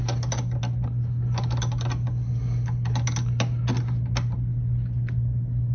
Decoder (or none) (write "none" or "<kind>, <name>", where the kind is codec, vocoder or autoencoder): none